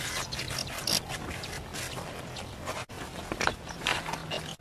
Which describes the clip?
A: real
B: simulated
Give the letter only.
A